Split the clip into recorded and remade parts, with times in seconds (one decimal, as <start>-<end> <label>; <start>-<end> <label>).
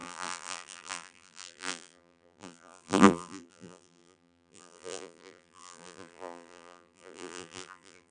0.0-8.1 remade